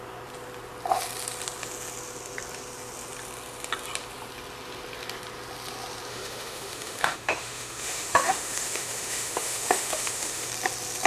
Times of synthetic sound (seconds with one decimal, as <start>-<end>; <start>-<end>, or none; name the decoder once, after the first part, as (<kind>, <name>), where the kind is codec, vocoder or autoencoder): 6.1-10.5 (autoencoder, DAC-VAE)